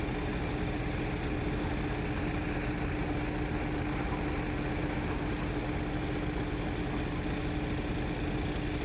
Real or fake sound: real